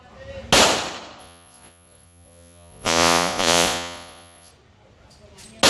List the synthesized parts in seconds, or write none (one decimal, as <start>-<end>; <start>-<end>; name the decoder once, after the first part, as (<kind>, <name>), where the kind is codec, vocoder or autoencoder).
1.2-4.5 (vocoder, Vocos)